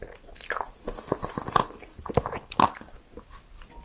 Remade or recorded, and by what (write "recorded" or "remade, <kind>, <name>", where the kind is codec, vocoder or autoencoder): recorded